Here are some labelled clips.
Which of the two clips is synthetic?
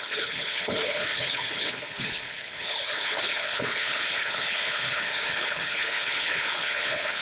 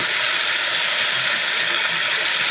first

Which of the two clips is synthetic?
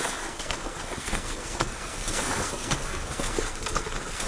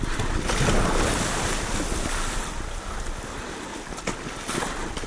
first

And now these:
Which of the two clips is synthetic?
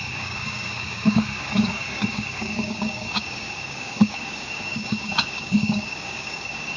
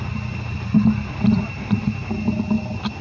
first